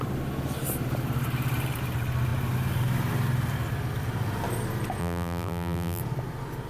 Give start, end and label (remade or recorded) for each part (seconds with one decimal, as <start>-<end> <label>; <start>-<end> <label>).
0.0-5.0 recorded; 5.0-6.0 remade; 6.0-6.7 recorded